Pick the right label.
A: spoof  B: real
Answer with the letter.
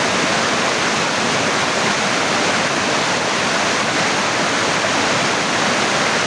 B